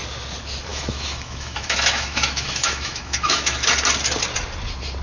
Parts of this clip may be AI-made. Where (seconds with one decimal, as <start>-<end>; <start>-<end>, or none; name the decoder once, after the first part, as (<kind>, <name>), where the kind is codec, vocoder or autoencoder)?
0.7-3.7 (autoencoder, DAC-VAE)